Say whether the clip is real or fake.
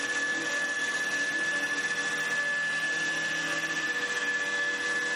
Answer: real